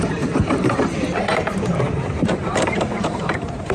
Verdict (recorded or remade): remade